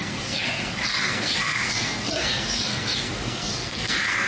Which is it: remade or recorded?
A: remade